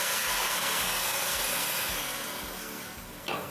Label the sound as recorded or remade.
remade